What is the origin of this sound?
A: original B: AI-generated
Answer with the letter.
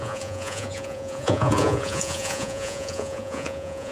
B